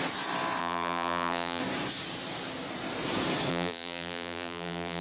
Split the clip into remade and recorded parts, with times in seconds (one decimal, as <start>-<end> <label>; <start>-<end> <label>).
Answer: 0.0-0.6 recorded; 0.6-1.6 remade; 1.6-3.5 recorded; 3.5-5.0 remade